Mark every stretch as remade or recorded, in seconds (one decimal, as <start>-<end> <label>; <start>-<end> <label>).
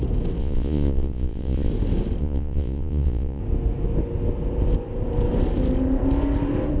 0.0-0.4 recorded; 0.4-1.7 remade; 1.7-2.2 recorded; 2.2-3.4 remade; 3.4-6.8 recorded